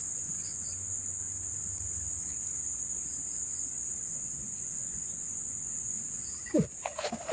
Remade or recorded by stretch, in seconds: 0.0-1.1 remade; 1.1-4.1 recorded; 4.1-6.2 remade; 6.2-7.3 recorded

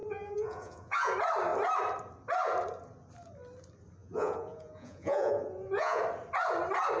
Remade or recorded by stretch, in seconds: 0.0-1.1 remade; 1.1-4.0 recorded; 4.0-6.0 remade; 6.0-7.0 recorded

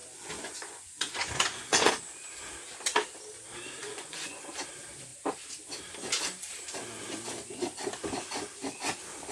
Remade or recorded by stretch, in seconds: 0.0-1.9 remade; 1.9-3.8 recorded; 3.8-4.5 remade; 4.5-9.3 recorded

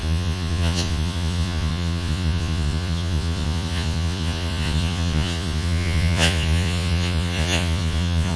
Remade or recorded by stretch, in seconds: 0.0-8.4 remade

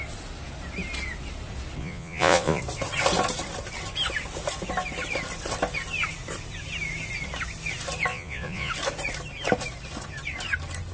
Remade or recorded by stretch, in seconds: 0.0-1.8 recorded; 1.8-2.6 remade; 2.6-8.1 recorded; 8.1-8.7 remade; 8.7-10.9 recorded

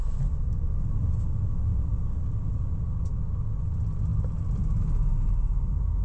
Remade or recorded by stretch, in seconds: 0.0-6.0 recorded

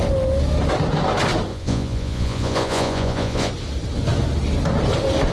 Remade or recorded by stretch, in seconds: 0.0-1.5 recorded; 1.5-3.5 remade; 3.5-5.3 recorded

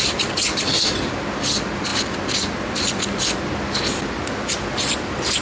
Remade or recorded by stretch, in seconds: 0.0-5.4 recorded